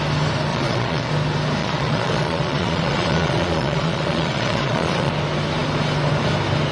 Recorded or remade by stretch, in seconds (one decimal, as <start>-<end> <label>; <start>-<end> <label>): 0.0-0.5 recorded; 0.5-1.1 remade; 1.1-1.6 recorded; 1.6-5.1 remade; 5.1-6.7 recorded